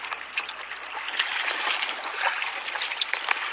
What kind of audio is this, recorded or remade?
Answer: recorded